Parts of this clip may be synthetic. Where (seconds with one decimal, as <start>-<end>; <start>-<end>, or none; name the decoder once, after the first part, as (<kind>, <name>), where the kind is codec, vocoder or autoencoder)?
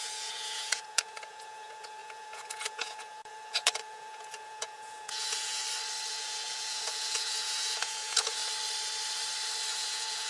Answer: 0.0-5.6 (vocoder, Vocos); 6.1-8.4; 9.7-10.3